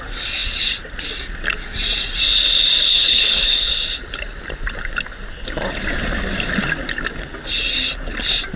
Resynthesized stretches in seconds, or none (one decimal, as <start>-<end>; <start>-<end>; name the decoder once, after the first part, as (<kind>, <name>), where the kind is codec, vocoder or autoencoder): 2.9-3.7 (codec, HILCodec)